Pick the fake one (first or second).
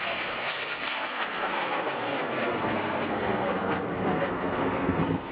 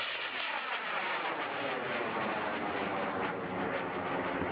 first